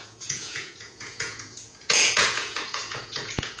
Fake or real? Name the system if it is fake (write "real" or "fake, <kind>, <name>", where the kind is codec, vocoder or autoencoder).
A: fake, vocoder, Vocos